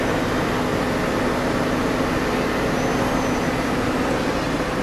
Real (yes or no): yes